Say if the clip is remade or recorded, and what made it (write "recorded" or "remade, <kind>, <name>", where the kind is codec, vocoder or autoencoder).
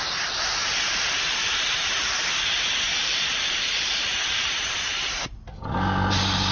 remade, vocoder, BigVGAN v2